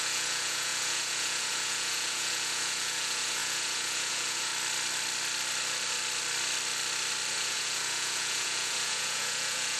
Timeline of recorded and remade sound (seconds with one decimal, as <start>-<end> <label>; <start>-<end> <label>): 0.0-4.5 remade; 4.5-7.3 recorded; 7.3-9.8 remade